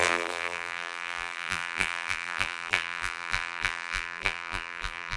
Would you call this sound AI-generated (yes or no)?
yes